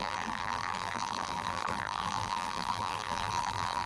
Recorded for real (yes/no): no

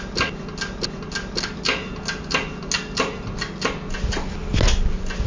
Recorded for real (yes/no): yes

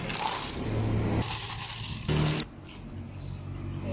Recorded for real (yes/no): yes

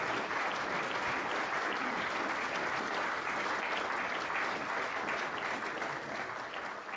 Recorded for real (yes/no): yes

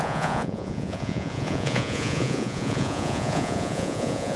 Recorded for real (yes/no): no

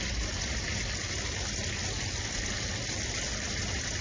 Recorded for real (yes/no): yes